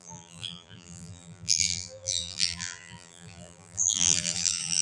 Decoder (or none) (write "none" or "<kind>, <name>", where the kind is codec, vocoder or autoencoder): vocoder, BigVGAN v2